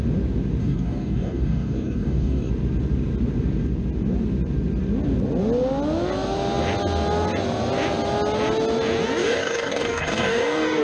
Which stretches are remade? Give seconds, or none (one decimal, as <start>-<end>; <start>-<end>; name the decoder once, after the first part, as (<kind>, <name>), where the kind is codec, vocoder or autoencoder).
0.6-2.5 (codec, DAC); 9.2-10.8